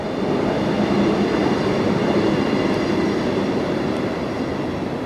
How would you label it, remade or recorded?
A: recorded